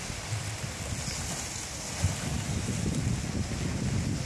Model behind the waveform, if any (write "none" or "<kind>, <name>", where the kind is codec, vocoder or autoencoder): none